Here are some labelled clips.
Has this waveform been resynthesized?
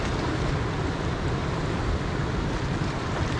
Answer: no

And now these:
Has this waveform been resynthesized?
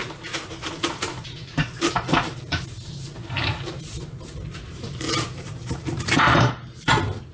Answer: yes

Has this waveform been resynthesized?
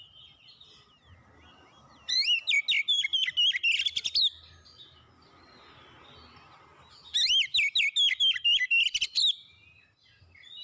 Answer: no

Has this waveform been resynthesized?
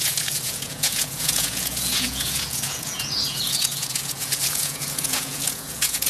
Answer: yes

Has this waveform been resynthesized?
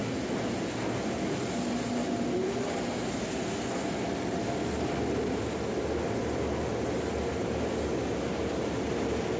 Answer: no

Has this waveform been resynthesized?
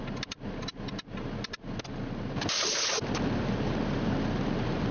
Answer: no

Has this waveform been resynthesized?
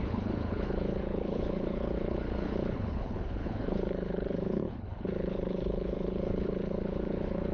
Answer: yes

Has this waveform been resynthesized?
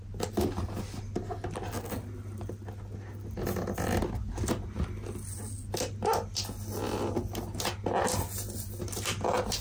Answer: no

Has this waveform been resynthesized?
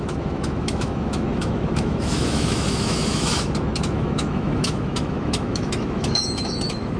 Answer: yes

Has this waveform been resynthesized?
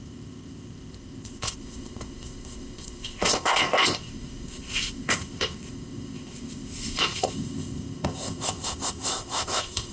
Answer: yes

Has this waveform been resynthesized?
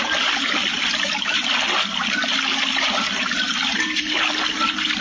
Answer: no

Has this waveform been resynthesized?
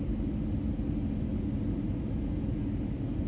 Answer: no